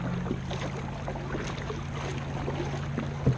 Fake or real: real